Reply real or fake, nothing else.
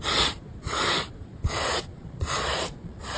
fake